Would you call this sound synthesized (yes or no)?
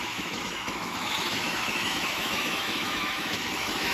yes